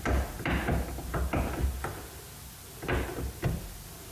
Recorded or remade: recorded